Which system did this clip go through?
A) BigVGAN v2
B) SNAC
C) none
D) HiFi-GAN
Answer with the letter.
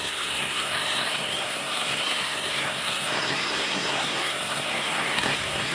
B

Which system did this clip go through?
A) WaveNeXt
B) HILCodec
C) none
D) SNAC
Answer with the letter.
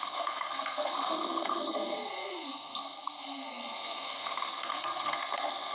D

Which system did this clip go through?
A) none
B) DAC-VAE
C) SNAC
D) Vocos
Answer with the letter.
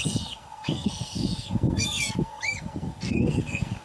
C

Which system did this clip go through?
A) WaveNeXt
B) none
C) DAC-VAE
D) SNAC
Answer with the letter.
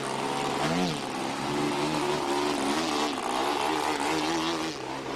B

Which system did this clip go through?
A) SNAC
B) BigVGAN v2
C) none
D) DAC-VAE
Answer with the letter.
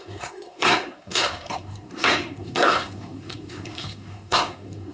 A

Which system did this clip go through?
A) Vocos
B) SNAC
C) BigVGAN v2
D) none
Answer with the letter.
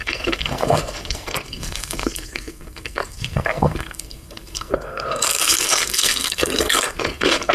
B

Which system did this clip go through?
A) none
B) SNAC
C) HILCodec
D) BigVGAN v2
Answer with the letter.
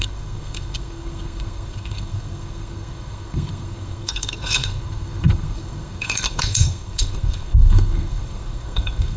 B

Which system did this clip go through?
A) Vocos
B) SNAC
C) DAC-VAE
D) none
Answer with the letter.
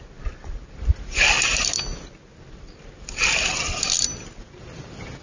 D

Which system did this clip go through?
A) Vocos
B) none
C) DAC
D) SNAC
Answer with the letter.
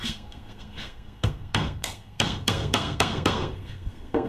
D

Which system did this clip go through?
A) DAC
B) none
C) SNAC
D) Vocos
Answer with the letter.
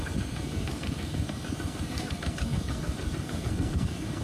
C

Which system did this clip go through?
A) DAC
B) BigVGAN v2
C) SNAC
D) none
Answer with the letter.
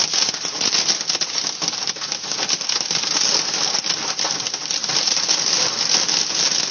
D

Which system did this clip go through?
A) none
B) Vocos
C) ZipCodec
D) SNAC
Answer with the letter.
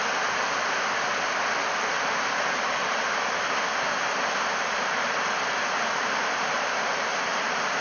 A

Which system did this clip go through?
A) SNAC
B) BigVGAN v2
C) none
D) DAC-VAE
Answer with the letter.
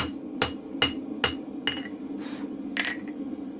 C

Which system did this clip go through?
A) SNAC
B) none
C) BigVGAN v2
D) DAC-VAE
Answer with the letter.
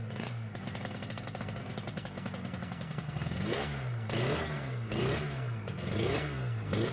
A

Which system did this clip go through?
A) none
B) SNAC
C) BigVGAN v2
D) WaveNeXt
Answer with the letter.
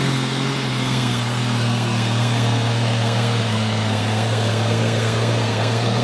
B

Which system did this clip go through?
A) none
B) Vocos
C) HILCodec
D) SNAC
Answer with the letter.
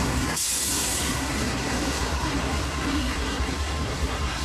D